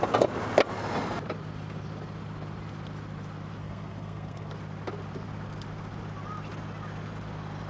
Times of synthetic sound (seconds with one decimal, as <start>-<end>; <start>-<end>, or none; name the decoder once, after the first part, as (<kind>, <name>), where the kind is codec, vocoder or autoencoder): 3.6-4.5 (codec, SNAC)